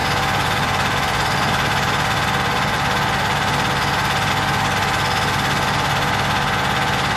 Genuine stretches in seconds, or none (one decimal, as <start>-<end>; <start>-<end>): 4.3-7.2